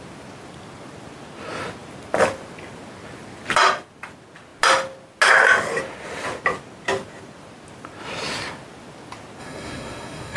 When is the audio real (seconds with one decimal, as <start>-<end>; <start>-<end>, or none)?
0.0-9.4